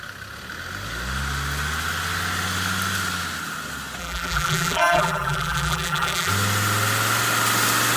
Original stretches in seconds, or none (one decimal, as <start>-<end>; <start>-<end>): 0.0-4.0; 6.3-8.0